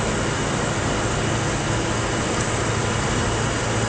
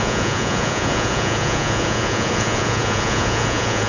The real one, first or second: first